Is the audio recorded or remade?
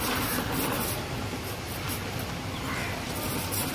remade